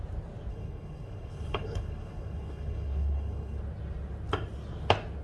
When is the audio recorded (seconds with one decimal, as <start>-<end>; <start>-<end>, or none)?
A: 0.0-0.5; 3.6-5.2